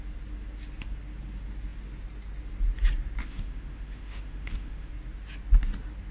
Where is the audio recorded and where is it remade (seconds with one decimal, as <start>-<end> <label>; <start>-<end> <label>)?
0.0-3.2 recorded; 3.2-4.9 remade; 4.9-6.1 recorded